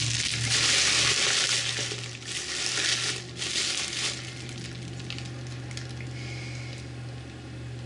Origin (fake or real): real